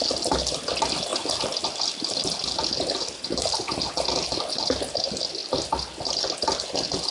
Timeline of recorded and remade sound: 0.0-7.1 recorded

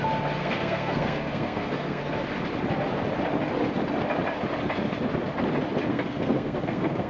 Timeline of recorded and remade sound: 0.0-0.4 recorded; 0.4-2.0 remade; 2.0-5.9 recorded; 5.9-7.1 remade

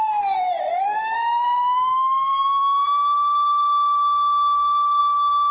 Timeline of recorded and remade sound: 0.0-5.5 recorded

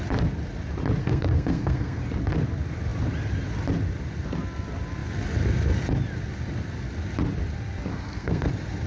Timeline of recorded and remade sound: 0.0-1.0 recorded; 1.0-2.0 remade; 2.0-7.9 recorded; 7.9-8.5 remade; 8.5-8.9 recorded

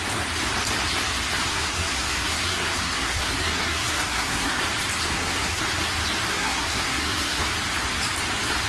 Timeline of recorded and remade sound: 0.0-1.5 recorded; 1.5-4.6 remade; 4.6-5.0 recorded; 5.0-5.6 remade; 5.6-6.3 recorded; 6.3-7.4 remade; 7.4-8.7 recorded

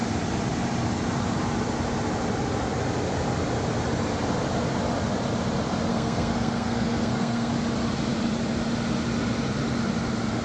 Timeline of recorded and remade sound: 0.0-5.9 recorded; 5.9-7.5 remade; 7.5-10.4 recorded

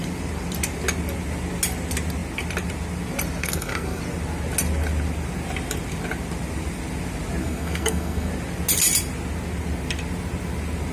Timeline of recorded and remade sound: 0.0-3.4 recorded; 3.4-4.0 remade; 4.0-7.4 recorded; 7.4-8.3 remade; 8.3-10.9 recorded